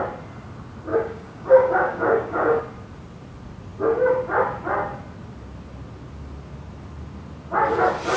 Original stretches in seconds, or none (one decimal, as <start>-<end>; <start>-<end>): 0.0-0.9; 2.6-8.2

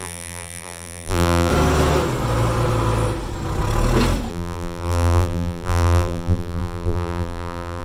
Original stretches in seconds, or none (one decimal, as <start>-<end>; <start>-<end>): 1.5-4.3

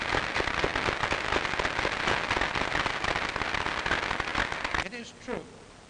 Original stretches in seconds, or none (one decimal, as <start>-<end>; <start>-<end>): 0.0-5.9

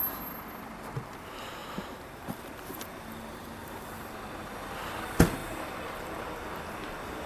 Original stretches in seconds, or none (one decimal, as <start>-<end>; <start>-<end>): 0.0-1.6; 4.1-5.4; 6.6-7.3

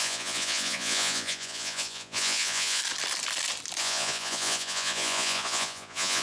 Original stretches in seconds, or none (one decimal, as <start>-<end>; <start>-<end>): 2.8-3.8

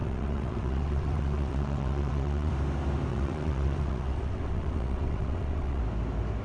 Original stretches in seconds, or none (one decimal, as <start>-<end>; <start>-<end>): 2.5-3.1; 5.8-6.4

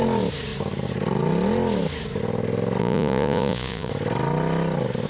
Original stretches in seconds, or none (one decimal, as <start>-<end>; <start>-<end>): 0.0-2.8; 3.9-5.1